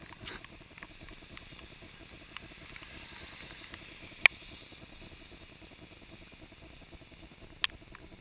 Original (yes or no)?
yes